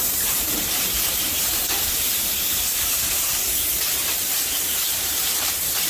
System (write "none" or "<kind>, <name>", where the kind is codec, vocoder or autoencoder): vocoder, BigVGAN v2